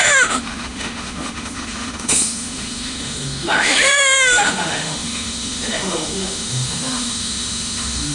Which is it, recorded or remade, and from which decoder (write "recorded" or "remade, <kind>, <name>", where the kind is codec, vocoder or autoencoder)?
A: remade, autoencoder, DAC-VAE